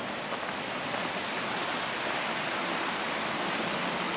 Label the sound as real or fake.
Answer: real